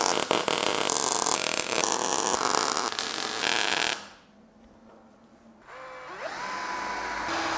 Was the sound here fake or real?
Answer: real